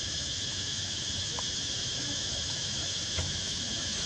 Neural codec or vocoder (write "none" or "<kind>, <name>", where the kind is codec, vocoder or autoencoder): autoencoder, DAC-VAE